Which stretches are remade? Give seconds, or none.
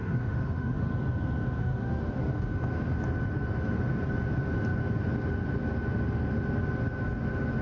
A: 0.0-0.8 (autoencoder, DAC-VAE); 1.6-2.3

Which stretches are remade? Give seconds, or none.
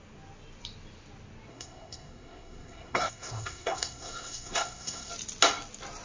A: 1.5-5.1 (codec, SNAC)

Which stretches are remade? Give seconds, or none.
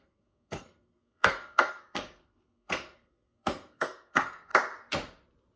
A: 0.0-4.5 (codec, SNAC)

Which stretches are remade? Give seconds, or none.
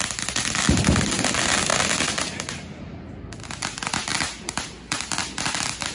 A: 4.1-5.2 (vocoder, BigVGAN v2)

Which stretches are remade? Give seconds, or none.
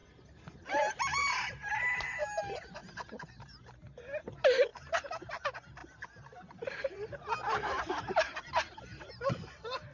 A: none